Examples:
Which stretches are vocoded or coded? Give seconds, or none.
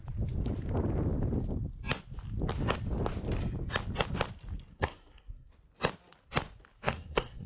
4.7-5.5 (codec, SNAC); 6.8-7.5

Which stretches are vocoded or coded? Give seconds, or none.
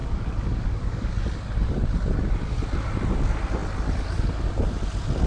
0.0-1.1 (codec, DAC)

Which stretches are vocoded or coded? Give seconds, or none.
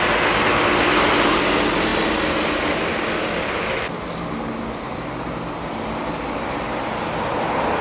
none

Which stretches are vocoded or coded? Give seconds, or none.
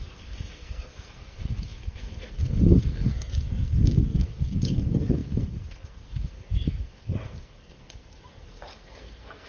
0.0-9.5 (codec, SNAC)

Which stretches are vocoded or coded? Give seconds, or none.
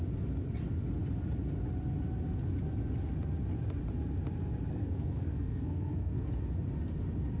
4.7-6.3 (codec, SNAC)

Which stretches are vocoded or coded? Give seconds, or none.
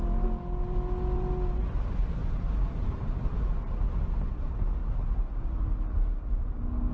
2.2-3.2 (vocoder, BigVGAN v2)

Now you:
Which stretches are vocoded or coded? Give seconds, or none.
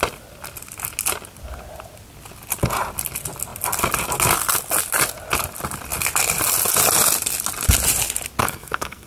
8.4-9.1 (codec, SNAC)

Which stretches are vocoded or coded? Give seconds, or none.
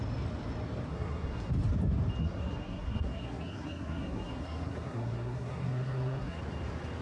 0.9-1.5 (codec, SNAC); 2.2-6.4